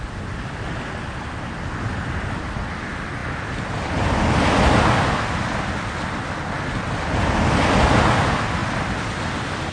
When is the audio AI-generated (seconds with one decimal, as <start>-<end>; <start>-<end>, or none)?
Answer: none